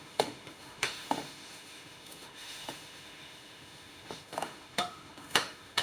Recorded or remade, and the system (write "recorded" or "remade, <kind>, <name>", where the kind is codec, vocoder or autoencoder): remade, autoencoder, DAC-VAE